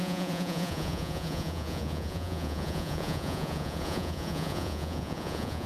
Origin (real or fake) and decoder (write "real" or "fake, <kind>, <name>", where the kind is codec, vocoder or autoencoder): fake, vocoder, Vocos